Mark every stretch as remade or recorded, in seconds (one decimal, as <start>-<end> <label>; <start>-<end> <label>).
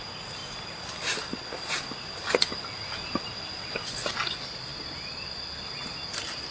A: 0.0-6.5 recorded